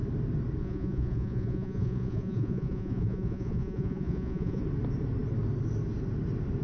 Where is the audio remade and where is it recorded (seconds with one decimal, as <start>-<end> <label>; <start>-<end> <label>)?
0.0-0.6 recorded; 0.6-4.6 remade; 4.6-6.6 recorded